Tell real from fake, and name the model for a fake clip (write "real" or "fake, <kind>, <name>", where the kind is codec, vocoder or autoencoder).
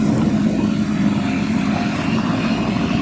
real